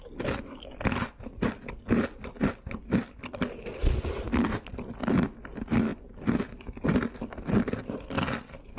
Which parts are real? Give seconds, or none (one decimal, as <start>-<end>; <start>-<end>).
0.0-8.8